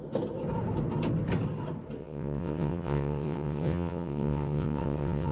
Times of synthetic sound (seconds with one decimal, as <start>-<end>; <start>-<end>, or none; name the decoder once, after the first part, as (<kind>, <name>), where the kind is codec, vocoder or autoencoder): 2.0-5.3 (vocoder, WaveNeXt)